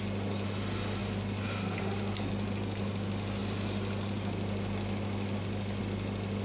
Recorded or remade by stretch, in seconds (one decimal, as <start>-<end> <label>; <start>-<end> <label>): 0.0-6.4 recorded

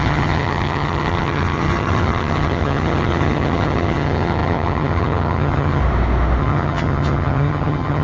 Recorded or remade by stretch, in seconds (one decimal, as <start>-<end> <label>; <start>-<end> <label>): 0.0-5.8 remade; 5.8-6.4 recorded; 6.4-8.0 remade

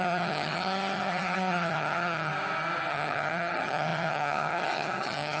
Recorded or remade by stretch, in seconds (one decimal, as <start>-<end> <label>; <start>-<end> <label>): 0.0-2.3 remade; 2.3-2.9 recorded; 2.9-5.4 remade

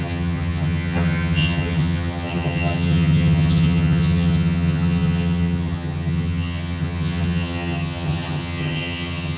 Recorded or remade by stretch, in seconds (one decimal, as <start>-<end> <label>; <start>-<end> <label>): 0.0-9.4 remade

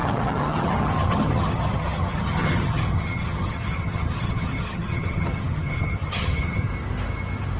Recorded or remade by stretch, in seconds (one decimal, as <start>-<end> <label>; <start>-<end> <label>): 0.0-6.7 remade; 6.7-7.6 recorded